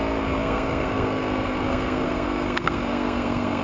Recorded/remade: remade